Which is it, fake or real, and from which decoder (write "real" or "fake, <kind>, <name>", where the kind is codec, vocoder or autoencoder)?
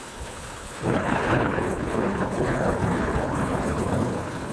fake, codec, HILCodec